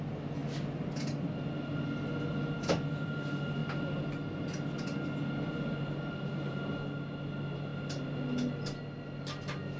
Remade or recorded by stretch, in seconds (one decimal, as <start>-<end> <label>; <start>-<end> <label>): 0.0-9.8 recorded